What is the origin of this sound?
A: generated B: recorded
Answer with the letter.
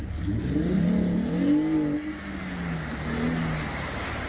B